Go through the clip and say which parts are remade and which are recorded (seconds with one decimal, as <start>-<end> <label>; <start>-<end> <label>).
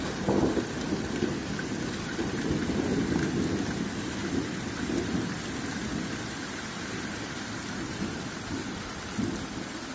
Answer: 0.0-9.9 recorded